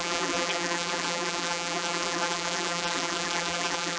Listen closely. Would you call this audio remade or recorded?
remade